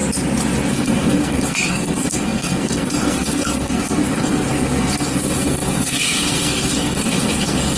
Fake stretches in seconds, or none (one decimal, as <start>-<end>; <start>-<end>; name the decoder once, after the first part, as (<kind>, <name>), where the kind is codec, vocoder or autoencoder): 0.7-7.8 (codec, SNAC)